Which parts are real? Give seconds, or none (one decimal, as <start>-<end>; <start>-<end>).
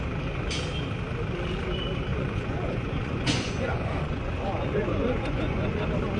0.0-2.1; 5.8-6.2